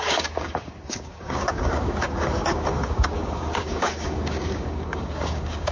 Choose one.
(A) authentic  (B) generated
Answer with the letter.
B